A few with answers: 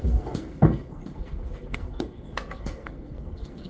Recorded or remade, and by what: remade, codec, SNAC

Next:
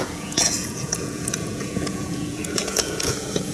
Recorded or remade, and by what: remade, vocoder, Vocos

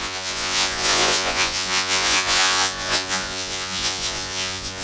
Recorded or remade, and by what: remade, vocoder, Vocos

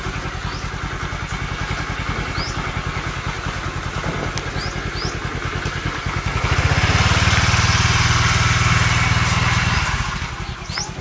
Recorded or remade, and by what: recorded